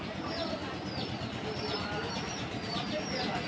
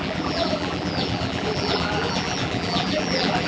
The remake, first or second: second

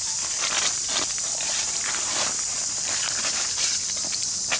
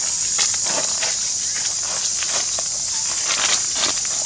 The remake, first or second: first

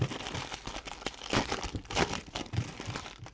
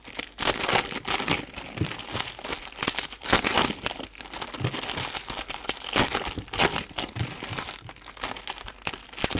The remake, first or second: first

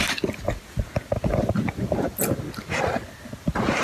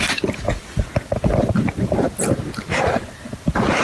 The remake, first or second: second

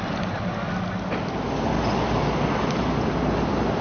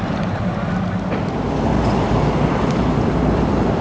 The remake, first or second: second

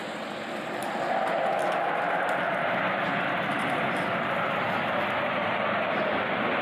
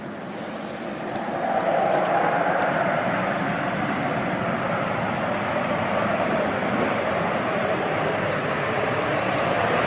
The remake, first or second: second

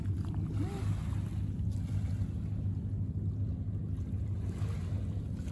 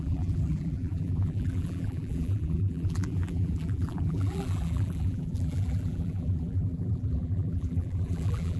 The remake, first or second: second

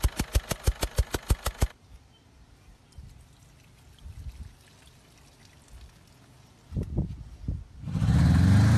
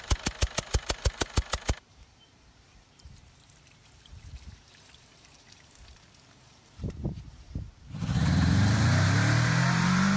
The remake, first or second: second